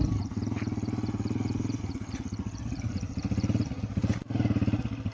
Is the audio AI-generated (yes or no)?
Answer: no